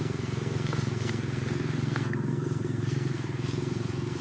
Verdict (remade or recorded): remade